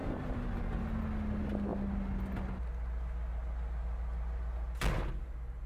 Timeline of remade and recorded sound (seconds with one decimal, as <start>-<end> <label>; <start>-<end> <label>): 0.0-0.6 remade; 0.6-5.7 recorded